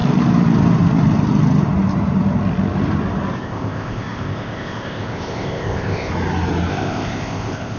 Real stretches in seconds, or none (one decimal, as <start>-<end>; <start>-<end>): 0.0-3.4; 6.1-6.7